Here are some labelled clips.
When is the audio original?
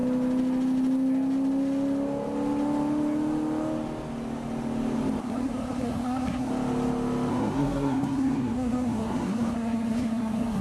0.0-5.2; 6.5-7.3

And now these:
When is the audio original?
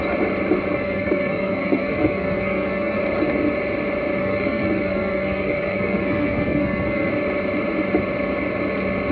0.0-0.7; 3.0-4.2; 7.1-9.1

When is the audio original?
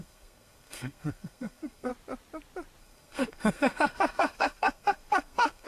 1.9-2.8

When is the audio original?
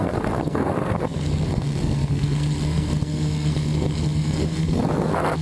none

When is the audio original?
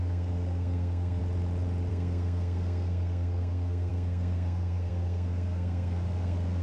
1.2-1.9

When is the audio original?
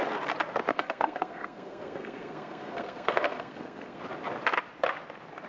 0.0-0.7; 4.0-5.5